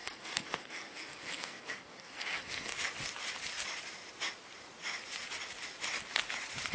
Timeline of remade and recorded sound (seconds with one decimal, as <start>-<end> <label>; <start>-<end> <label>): 0.0-2.7 remade; 2.7-6.7 recorded

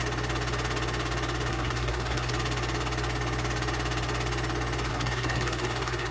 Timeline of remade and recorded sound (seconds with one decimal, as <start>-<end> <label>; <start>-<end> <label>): 0.0-1.5 recorded; 1.5-2.3 remade; 2.3-4.9 recorded; 4.9-6.1 remade

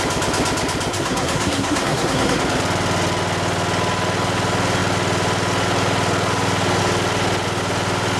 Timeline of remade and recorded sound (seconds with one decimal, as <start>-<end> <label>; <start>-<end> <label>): 0.0-0.9 recorded; 0.9-2.4 remade; 2.4-8.2 recorded

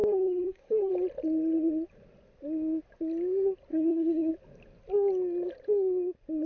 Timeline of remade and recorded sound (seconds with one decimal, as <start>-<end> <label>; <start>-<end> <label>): 0.0-0.9 remade; 0.9-3.7 recorded; 3.7-4.3 remade; 4.3-6.5 recorded

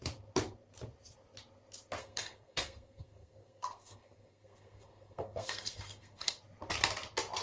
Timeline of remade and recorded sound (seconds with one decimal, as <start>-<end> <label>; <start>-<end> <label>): 0.0-2.0 recorded; 2.0-6.4 remade; 6.4-7.4 recorded

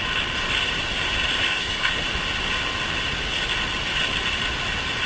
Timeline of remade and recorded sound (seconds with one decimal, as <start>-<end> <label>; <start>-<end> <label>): 0.0-1.5 recorded; 1.5-2.0 remade; 2.0-5.1 recorded